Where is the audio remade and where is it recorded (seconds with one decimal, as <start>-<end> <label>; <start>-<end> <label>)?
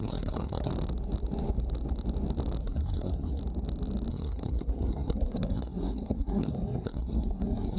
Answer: 0.0-0.7 remade; 0.7-2.6 recorded; 2.6-3.4 remade; 3.4-4.1 recorded; 4.1-7.8 remade